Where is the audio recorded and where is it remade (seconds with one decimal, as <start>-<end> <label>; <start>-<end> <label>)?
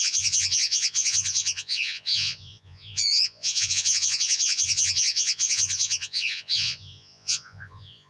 0.0-8.1 remade